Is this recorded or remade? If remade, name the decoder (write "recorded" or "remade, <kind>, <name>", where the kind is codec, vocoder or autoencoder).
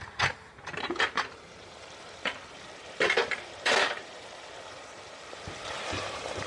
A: remade, vocoder, BigVGAN v2